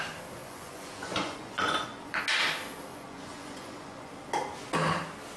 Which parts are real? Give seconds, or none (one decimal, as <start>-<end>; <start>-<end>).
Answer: 0.0-0.4; 2.2-2.9; 4.1-5.4